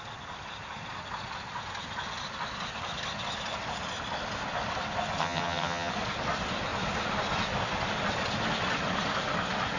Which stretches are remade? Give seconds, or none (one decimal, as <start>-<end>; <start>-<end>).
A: 5.2-5.9